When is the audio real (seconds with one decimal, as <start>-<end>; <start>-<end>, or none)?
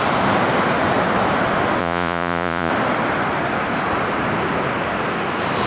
0.0-1.8; 2.7-5.7